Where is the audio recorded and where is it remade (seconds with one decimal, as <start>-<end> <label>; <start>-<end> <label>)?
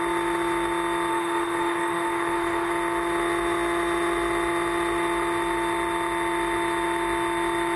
0.0-1.1 recorded; 1.1-2.7 remade; 2.7-7.8 recorded